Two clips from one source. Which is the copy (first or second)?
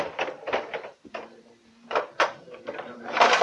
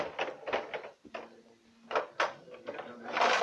first